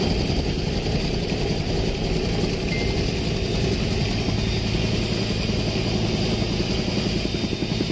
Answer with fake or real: real